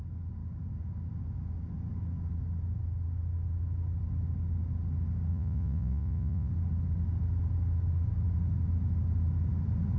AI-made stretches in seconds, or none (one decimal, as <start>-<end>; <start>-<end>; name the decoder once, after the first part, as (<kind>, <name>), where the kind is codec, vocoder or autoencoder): 5.3-6.5 (vocoder, Vocos)